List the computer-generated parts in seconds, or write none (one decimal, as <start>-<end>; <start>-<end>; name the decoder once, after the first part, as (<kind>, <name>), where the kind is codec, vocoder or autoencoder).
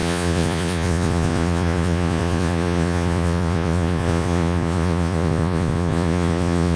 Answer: 0.0-6.8 (vocoder, Vocos)